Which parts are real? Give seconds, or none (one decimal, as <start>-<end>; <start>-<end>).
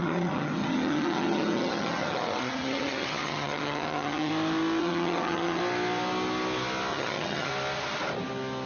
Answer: 4.3-4.8; 5.6-6.9; 7.5-8.7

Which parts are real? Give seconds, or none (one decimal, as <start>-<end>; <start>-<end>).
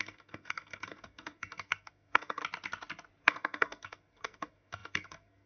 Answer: 2.4-3.2